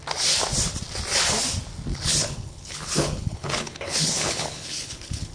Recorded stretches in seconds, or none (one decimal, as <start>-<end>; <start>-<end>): 0.0-1.9